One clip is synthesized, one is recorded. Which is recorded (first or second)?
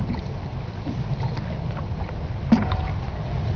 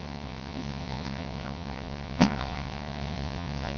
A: first